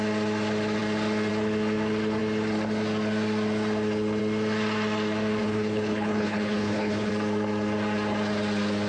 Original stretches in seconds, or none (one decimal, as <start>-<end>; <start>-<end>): 0.0-5.4; 7.1-8.9